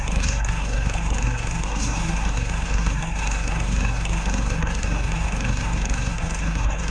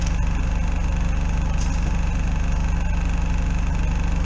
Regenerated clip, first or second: first